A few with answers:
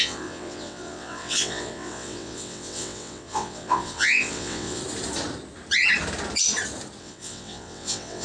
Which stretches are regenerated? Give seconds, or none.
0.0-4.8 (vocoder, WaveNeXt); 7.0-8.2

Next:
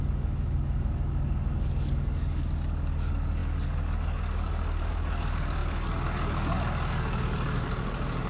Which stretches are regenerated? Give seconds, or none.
0.0-8.3 (codec, DAC)

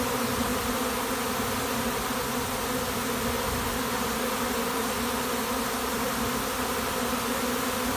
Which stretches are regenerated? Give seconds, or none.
none

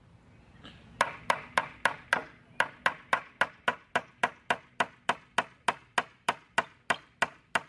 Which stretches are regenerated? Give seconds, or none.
none

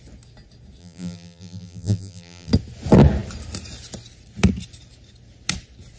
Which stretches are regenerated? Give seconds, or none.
0.8-2.5 (vocoder, BigVGAN v2)

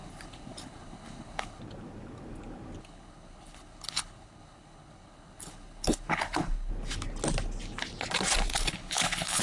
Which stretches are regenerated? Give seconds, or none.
0.0-1.6 (codec, HILCodec); 2.8-6.7; 8.5-9.4

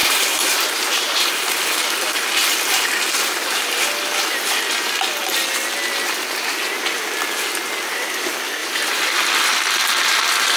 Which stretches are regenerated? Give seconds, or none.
0.0-1.6 (vocoder, BigVGAN v2); 8.6-9.1

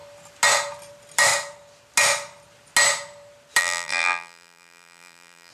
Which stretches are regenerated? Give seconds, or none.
3.6-5.5 (vocoder, BigVGAN v2)